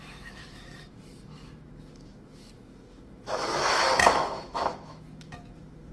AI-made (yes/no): yes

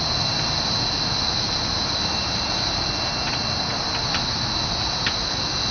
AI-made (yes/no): no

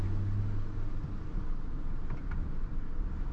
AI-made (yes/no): no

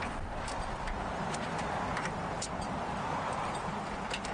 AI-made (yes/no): no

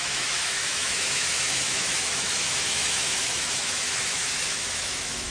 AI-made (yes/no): yes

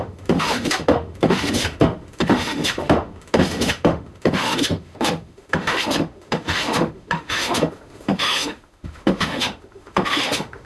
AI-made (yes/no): yes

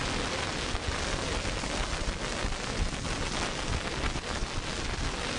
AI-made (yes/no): no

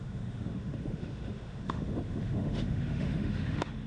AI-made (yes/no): yes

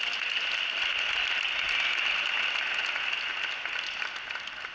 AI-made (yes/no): no